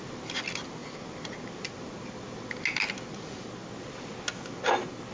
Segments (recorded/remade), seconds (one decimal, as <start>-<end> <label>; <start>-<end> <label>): 0.0-5.1 recorded